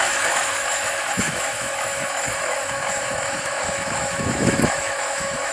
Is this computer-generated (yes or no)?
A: yes